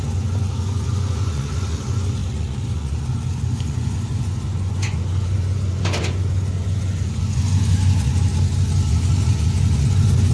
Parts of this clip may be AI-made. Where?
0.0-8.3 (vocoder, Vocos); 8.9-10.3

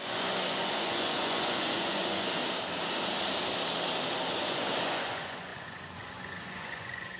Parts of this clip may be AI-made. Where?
0.0-2.4 (vocoder, Vocos); 4.3-7.2

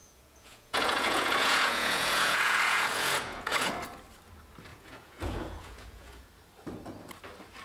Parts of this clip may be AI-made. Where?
0.0-3.7 (vocoder, Vocos); 4.7-6.3

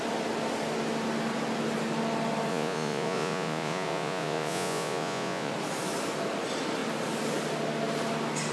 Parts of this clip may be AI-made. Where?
2.5-5.5 (vocoder, Vocos)

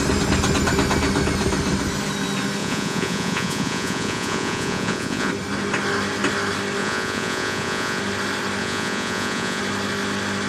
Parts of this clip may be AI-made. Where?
2.6-5.3 (vocoder, Vocos); 6.8-8.0; 8.6-9.6

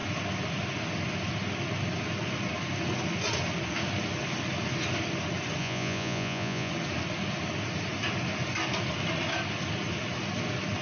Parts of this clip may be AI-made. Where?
5.6-6.7 (vocoder, Vocos)

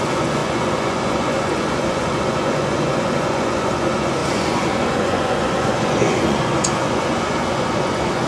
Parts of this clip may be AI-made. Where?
0.0-8.3 (vocoder, Vocos)